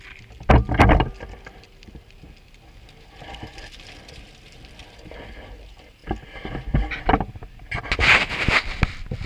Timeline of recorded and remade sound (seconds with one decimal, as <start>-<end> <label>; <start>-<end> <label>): 0.0-9.3 recorded